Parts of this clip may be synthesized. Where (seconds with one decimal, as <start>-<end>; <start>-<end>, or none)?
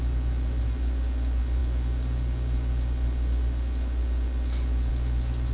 none